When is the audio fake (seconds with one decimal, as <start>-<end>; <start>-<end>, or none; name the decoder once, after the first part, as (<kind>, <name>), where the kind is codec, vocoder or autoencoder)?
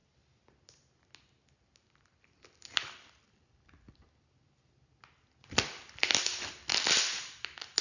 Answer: none